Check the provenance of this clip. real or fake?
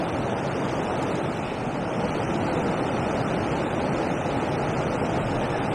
fake